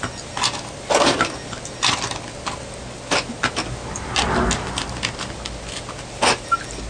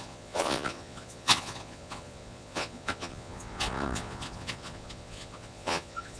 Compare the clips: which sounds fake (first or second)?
second